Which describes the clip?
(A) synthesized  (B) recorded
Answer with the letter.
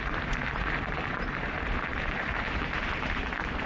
A